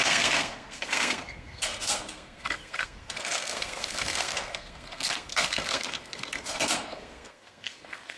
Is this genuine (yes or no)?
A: no